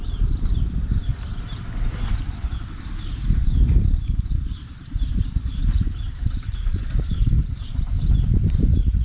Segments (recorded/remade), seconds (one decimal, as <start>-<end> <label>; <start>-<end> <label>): 0.0-1.1 remade; 1.1-2.3 recorded; 2.3-9.0 remade